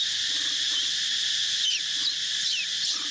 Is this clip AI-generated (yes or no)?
no